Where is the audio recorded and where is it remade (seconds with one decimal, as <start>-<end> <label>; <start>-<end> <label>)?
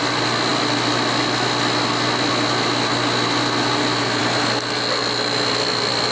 0.0-6.1 recorded